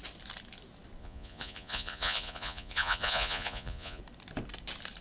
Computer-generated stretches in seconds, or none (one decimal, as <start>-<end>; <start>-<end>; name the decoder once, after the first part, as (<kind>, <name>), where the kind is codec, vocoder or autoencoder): 1.0-4.0 (vocoder, Vocos)